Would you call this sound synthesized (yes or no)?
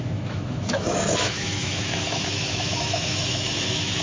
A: yes